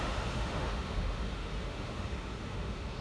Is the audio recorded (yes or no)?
no